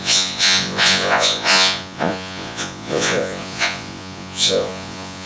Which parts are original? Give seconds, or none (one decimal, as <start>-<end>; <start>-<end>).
none